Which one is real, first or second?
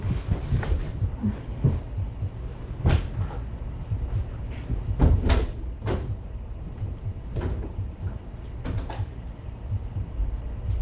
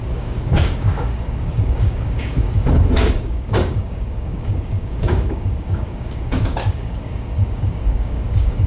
first